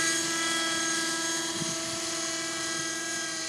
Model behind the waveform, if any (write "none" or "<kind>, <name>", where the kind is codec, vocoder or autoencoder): none